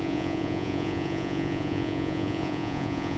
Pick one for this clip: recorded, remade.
remade